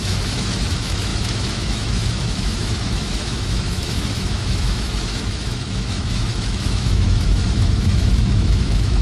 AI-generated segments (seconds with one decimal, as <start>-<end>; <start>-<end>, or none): 0.0-9.0